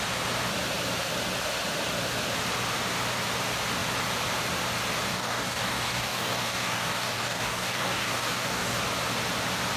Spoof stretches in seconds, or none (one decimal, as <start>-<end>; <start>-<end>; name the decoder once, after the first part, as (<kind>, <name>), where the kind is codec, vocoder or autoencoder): 5.1-8.8 (codec, DAC)